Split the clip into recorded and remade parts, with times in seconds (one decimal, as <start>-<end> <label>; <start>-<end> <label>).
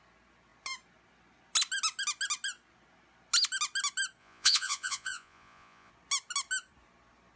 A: 0.0-4.2 recorded; 4.2-5.9 remade; 5.9-7.4 recorded